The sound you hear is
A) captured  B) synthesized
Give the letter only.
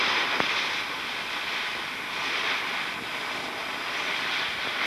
A